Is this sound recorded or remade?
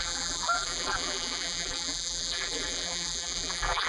remade